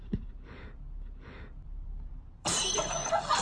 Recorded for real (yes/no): no